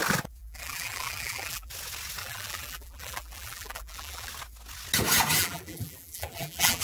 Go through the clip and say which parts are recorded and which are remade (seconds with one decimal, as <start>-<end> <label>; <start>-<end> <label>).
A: 0.0-0.4 recorded; 0.4-1.7 remade; 1.7-2.2 recorded; 2.2-4.3 remade; 4.3-5.4 recorded; 5.4-6.8 remade